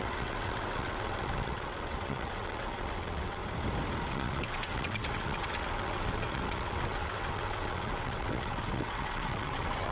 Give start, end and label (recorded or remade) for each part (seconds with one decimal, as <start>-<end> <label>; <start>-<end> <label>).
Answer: 0.0-3.4 remade; 3.4-4.1 recorded; 4.1-9.9 remade